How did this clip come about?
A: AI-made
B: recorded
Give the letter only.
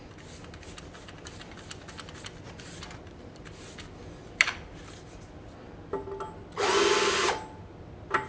B